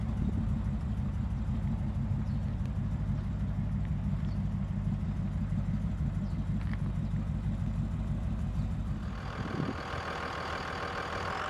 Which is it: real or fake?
real